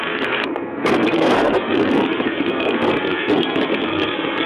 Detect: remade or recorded remade